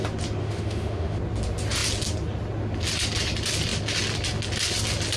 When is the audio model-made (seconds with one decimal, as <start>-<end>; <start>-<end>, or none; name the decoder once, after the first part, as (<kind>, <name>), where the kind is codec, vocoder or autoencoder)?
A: 0.4-1.2 (autoencoder, DAC-VAE)